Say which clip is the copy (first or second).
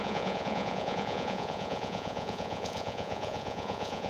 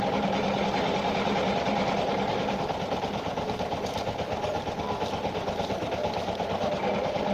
first